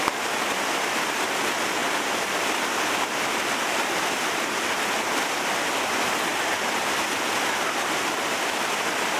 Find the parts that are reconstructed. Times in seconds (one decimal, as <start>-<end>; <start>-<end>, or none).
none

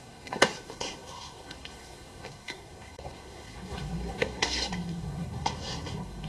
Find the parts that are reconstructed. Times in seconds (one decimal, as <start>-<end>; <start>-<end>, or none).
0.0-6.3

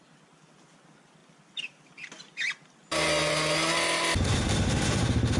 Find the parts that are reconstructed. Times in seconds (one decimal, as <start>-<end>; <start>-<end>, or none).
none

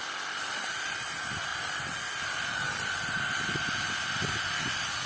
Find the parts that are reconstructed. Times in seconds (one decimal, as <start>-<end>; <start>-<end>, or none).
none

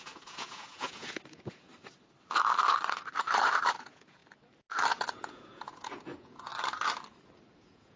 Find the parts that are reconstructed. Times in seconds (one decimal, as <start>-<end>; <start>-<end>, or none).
0.0-1.7; 3.7-4.2; 4.9-6.5; 7.6-8.0